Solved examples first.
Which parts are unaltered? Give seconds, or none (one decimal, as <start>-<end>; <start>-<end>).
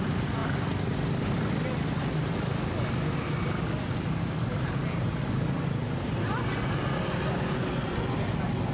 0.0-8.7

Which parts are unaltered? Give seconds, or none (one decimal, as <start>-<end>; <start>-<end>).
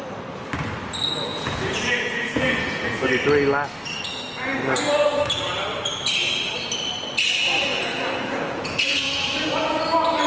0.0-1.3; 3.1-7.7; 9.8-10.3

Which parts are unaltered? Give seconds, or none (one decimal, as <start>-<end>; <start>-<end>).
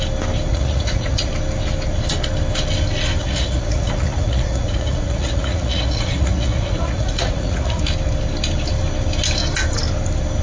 0.0-0.5; 1.3-3.2; 7.8-10.4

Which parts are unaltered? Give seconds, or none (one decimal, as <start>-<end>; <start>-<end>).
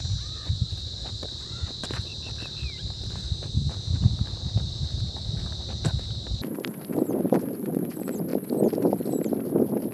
2.1-7.2; 8.3-9.9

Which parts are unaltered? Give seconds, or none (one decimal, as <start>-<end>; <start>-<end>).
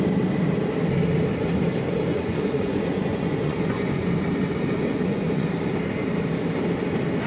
0.0-2.1; 4.1-4.9; 5.5-7.3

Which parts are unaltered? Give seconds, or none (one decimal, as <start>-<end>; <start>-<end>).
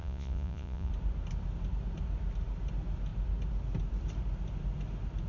0.9-5.3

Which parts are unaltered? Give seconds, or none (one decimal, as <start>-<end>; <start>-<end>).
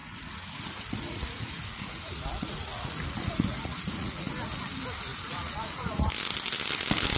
4.3-5.1; 6.1-7.2